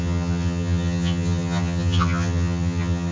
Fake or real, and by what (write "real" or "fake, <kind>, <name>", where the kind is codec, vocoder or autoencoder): fake, vocoder, HiFi-GAN